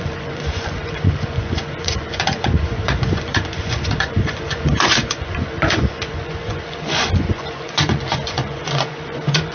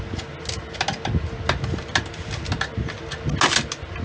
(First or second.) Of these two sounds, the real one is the second